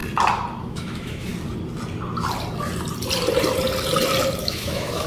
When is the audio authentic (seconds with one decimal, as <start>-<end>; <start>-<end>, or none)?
0.0-0.6; 1.3-4.4